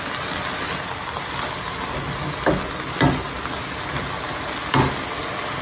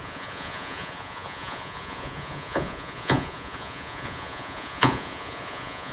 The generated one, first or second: second